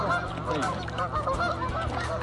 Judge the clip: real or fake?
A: real